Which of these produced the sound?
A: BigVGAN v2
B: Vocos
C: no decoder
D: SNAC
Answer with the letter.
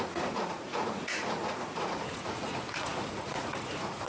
B